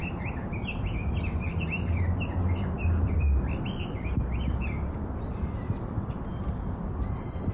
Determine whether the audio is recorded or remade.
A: remade